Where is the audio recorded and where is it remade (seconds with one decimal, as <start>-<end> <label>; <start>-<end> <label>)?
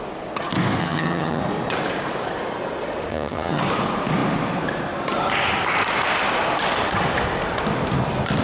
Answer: 0.0-0.8 recorded; 0.8-1.4 remade; 1.4-3.1 recorded; 3.1-3.6 remade; 3.6-8.4 recorded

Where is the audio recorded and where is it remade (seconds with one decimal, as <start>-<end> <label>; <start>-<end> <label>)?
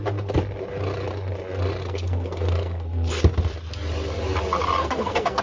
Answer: 0.0-1.8 recorded; 1.8-3.2 remade; 3.2-4.8 recorded; 4.8-5.4 remade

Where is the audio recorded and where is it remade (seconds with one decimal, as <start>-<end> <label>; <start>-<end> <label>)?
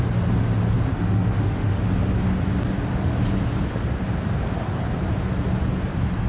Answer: 0.0-0.9 recorded; 0.9-1.8 remade; 1.8-6.3 recorded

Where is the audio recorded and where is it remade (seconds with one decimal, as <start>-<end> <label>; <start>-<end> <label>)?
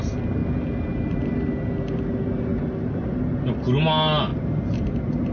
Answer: 0.0-5.3 recorded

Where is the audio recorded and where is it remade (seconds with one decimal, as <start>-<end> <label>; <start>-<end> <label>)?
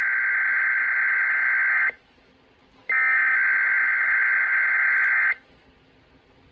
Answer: 0.0-6.5 recorded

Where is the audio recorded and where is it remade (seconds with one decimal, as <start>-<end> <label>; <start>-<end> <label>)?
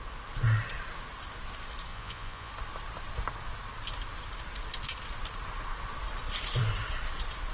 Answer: 0.0-1.9 recorded; 1.9-2.5 remade; 2.5-7.5 recorded